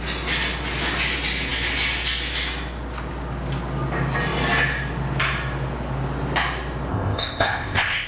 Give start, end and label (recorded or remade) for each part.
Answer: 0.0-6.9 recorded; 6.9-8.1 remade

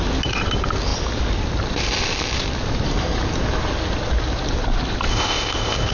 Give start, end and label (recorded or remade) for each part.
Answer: 0.0-5.1 recorded; 5.1-5.9 remade

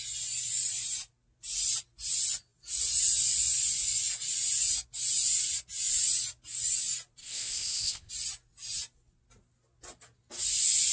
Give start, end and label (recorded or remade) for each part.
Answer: 0.0-7.2 recorded; 7.2-8.1 remade; 8.1-10.9 recorded

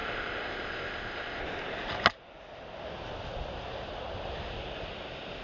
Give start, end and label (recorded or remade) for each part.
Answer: 0.0-1.4 remade; 1.4-5.4 recorded

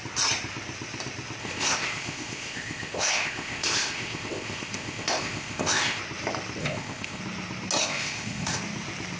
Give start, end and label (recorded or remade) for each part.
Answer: 0.0-1.4 recorded; 1.4-6.0 remade; 6.0-6.6 recorded; 6.6-7.2 remade; 7.2-7.8 recorded; 7.8-8.6 remade; 8.6-9.2 recorded

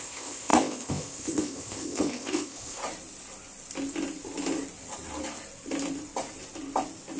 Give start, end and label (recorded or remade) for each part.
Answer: 0.0-2.8 remade; 2.8-7.2 recorded

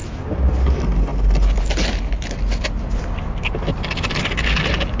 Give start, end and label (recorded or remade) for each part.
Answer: 0.0-5.0 recorded